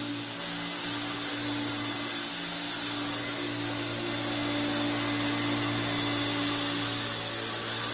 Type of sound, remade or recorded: recorded